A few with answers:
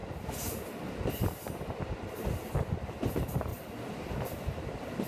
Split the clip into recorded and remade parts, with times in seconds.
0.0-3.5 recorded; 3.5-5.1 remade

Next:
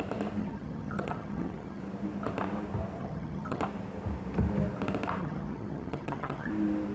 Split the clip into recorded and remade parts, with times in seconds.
0.0-0.4 recorded; 0.4-1.8 remade; 1.8-3.0 recorded; 3.0-3.6 remade; 3.6-5.2 recorded; 5.2-6.5 remade; 6.5-6.9 recorded

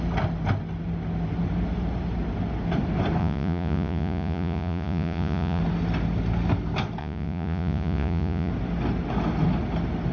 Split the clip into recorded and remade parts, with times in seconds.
0.0-3.2 recorded; 3.2-5.6 remade; 5.6-7.0 recorded; 7.0-8.5 remade; 8.5-10.1 recorded

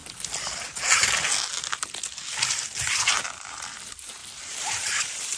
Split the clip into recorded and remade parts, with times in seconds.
0.0-4.2 recorded; 4.2-5.0 remade; 5.0-5.4 recorded